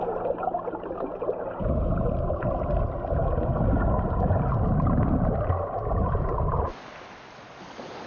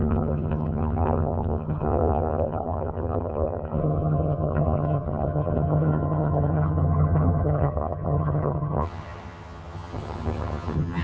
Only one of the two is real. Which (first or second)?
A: first